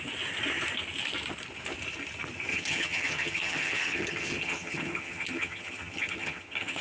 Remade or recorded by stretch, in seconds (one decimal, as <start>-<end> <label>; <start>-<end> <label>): 0.0-2.5 recorded; 2.5-6.8 remade

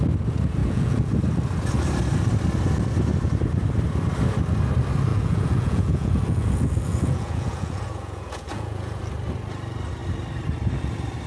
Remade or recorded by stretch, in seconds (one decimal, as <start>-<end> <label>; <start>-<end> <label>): 0.0-0.6 recorded; 0.6-1.1 remade; 1.1-5.1 recorded; 5.1-9.0 remade; 9.0-11.3 recorded